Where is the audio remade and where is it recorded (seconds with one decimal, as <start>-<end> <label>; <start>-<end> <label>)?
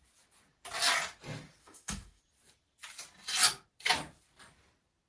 0.0-1.6 recorded; 1.6-2.2 remade; 2.2-5.1 recorded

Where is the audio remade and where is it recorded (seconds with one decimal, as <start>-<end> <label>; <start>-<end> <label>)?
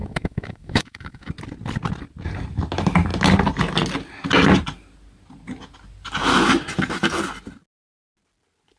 0.0-1.3 remade; 1.3-8.8 recorded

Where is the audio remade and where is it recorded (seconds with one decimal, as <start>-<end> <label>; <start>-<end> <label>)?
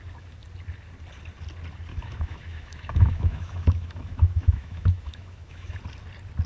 0.0-1.9 recorded; 1.9-5.8 remade; 5.8-6.5 recorded